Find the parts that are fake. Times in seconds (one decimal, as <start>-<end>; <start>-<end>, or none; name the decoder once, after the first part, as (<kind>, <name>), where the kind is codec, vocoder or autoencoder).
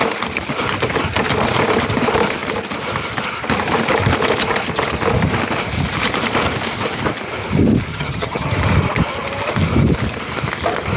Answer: 7.9-8.5 (vocoder, HiFi-GAN)